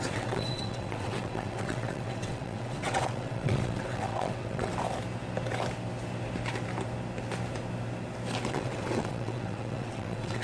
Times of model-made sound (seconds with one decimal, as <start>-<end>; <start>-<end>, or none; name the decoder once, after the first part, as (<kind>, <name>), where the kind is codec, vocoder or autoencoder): 0.0-4.7 (vocoder, WaveNeXt); 8.5-10.4